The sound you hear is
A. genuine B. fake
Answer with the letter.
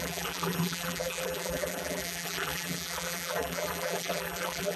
B